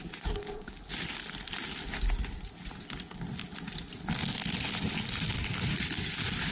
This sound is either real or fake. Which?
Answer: real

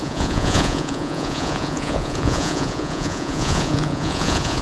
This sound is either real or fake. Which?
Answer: fake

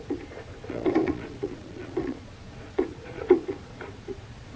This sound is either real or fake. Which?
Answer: fake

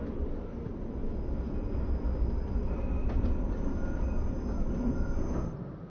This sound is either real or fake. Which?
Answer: real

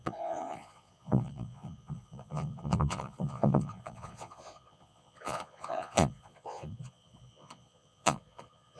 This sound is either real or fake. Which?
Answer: fake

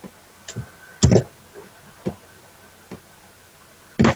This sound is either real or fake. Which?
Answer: real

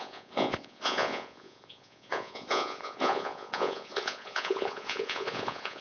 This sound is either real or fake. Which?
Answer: fake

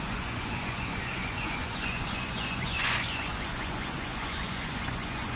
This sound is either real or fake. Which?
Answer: fake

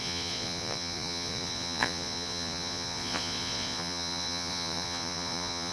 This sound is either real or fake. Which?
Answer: fake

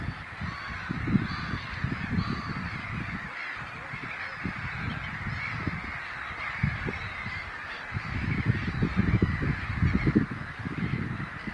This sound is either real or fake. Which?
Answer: real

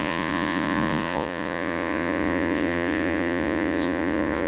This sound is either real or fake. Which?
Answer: fake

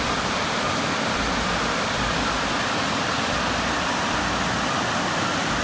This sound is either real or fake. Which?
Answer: real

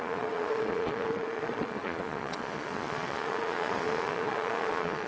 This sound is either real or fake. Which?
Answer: fake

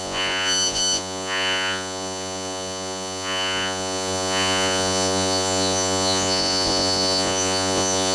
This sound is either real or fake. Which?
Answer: fake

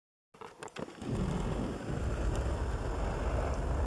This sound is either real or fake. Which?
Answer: real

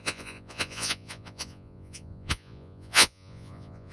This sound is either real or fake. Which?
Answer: fake